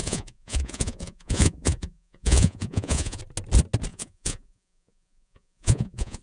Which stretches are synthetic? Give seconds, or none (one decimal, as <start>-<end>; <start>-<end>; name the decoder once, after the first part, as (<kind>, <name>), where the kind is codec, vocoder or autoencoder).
0.0-3.2 (vocoder, Vocos); 3.9-6.2